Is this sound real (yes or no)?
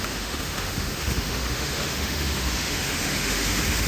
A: no